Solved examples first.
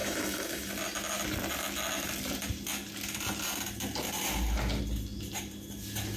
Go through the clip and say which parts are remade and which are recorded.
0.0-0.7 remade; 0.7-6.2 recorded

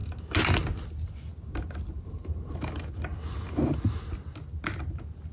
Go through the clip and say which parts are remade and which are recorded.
0.0-5.3 recorded

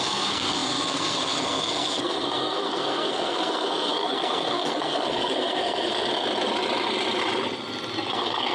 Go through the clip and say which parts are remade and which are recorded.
0.0-6.1 remade; 6.1-8.1 recorded; 8.1-8.5 remade

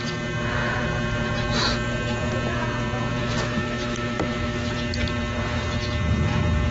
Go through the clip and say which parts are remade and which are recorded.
0.0-3.2 recorded; 3.2-4.7 remade; 4.7-6.7 recorded

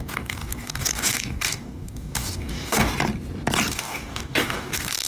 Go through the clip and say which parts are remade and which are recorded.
0.0-2.9 remade; 2.9-3.7 recorded; 3.7-5.1 remade

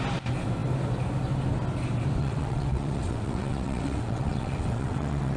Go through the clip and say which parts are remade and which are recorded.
0.0-2.2 recorded; 2.2-5.4 remade